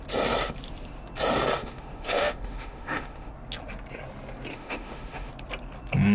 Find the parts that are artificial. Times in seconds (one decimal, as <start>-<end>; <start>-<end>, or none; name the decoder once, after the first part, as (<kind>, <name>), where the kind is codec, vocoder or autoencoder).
1.6-3.3 (autoencoder, DAC-VAE); 4.5-5.3